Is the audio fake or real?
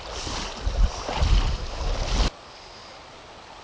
real